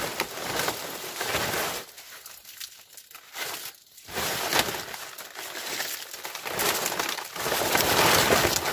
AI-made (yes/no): no